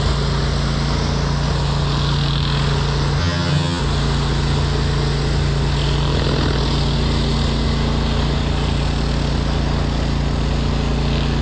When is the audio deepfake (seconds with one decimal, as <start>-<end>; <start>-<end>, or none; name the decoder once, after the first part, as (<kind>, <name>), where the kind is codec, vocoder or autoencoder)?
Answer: 3.2-3.8 (vocoder, HiFi-GAN)